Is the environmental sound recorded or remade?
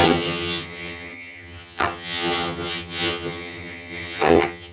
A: remade